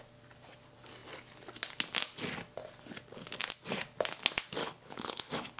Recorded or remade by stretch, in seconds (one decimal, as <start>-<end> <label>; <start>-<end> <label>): 0.0-4.6 recorded; 4.6-5.6 remade